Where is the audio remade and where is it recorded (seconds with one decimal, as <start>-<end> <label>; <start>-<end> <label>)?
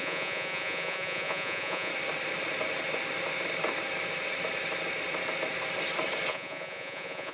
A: 0.0-1.9 remade; 1.9-6.3 recorded; 6.3-7.3 remade